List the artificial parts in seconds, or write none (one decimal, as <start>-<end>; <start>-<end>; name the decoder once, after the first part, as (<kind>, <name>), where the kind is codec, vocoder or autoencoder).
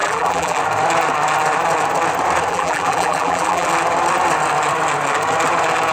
0.0-0.6 (vocoder, BigVGAN v2); 2.5-3.7